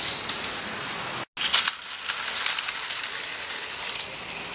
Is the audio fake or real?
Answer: real